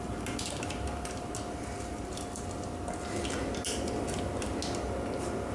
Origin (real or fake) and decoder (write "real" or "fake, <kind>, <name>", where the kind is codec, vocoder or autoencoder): real